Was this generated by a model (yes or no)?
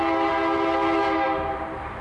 no